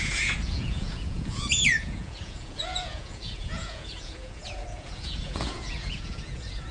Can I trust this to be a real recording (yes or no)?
no